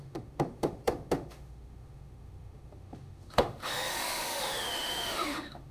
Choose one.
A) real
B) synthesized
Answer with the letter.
B